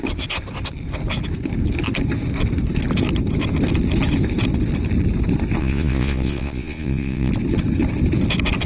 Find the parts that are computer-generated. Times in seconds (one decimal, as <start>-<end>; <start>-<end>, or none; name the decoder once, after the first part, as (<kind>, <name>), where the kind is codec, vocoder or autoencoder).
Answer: 5.6-7.3 (vocoder, Vocos)